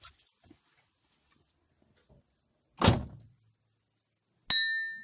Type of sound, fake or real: real